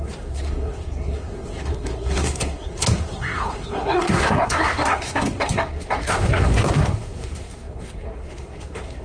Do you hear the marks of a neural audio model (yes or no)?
yes